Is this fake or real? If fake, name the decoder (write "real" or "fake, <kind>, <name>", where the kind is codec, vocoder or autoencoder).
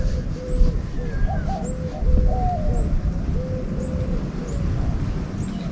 real